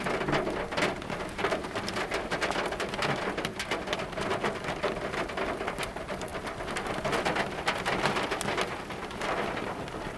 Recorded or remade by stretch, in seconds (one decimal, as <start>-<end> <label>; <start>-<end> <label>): 0.0-10.2 recorded